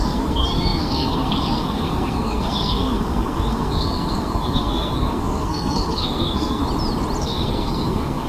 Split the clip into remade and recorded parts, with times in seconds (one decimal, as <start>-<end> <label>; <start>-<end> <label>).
0.0-6.6 remade; 6.6-7.2 recorded; 7.2-8.3 remade